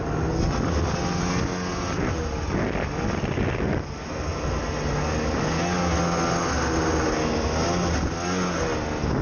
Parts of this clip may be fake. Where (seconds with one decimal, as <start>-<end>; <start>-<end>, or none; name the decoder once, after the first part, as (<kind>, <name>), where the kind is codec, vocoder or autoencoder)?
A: none